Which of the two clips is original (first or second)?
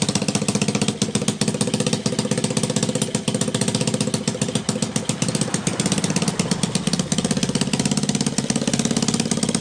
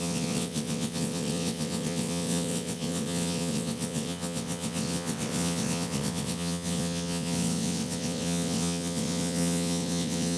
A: first